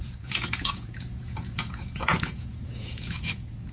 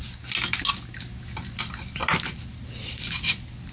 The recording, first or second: second